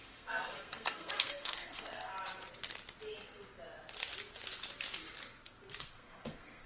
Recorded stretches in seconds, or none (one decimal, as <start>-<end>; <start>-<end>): 2.1-5.8